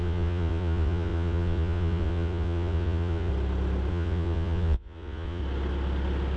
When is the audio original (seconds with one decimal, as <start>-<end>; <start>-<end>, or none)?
3.3-3.9; 5.4-6.4